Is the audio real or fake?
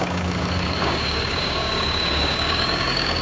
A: fake